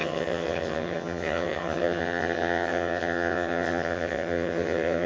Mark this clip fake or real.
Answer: fake